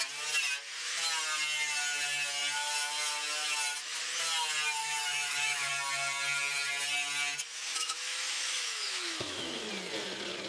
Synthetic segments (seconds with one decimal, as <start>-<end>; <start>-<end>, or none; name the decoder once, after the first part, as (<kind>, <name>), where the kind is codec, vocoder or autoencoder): 4.8-5.7 (autoencoder, DAC-VAE); 7.7-9.7